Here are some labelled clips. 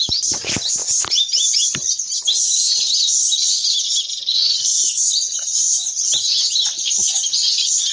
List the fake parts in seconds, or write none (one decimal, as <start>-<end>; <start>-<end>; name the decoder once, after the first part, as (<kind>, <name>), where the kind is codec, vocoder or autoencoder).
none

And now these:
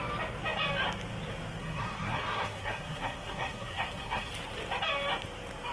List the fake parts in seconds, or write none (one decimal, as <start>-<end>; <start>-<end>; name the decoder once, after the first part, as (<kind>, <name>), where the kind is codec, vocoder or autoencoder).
1.6-4.3 (codec, SNAC)

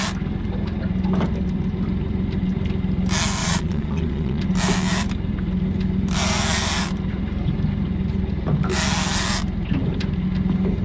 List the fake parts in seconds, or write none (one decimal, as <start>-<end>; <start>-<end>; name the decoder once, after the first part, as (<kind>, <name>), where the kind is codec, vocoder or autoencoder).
3.4-4.4 (vocoder, Vocos)

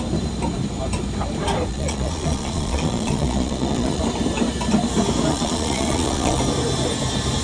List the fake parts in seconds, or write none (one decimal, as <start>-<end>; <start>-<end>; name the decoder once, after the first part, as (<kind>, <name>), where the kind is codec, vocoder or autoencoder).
1.7-4.0 (vocoder, Vocos); 5.3-6.4

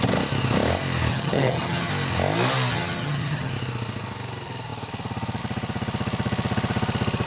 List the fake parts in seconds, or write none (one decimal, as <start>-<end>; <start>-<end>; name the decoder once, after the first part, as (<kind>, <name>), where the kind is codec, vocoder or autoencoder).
1.1-1.9 (vocoder, HiFi-GAN); 2.7-3.5

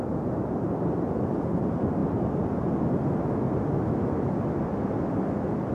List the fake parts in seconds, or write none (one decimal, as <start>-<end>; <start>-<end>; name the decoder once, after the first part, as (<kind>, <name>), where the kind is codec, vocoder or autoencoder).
none